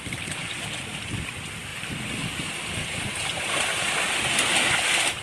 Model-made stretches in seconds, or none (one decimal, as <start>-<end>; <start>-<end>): none